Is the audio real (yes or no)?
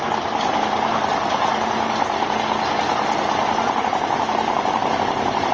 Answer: yes